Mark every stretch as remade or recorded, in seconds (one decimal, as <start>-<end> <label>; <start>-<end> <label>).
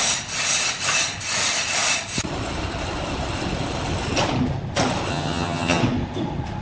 0.0-5.1 recorded; 5.1-5.8 remade; 5.8-6.6 recorded